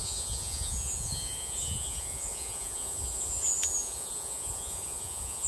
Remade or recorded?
remade